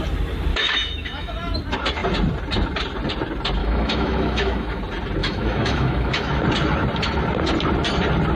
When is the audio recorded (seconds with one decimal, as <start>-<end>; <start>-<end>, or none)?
0.0-0.5; 1.3-3.6; 4.8-5.2; 6.4-8.4